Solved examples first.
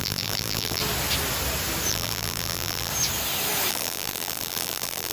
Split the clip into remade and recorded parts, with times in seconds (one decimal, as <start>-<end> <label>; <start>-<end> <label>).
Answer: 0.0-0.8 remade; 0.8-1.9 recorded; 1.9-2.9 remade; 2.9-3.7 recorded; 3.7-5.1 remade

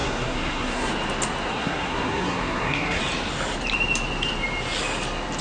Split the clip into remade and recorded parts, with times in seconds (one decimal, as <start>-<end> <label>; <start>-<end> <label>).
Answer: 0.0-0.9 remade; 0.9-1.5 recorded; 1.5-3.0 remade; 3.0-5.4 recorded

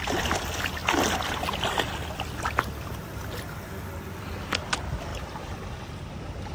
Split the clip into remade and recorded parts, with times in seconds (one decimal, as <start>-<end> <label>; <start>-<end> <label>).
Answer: 0.0-6.5 recorded

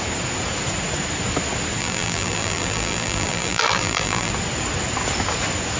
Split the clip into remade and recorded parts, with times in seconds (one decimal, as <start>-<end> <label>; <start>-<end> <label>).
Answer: 0.0-1.8 recorded; 1.8-4.3 remade; 4.3-5.8 recorded

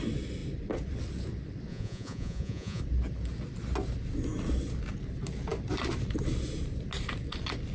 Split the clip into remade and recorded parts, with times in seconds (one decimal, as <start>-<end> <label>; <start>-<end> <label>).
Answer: 0.0-1.7 recorded; 1.7-2.8 remade; 2.8-7.7 recorded